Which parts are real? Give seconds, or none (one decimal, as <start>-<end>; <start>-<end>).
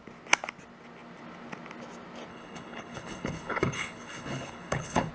0.0-2.3